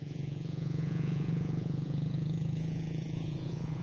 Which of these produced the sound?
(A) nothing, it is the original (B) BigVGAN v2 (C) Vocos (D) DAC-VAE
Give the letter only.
C